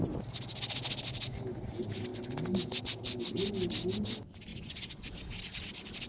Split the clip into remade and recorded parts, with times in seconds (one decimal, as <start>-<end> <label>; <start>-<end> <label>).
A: 0.0-4.5 recorded; 4.5-5.1 remade; 5.1-6.1 recorded